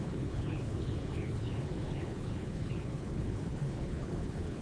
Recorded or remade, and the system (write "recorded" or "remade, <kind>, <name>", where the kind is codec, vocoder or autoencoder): remade, codec, HILCodec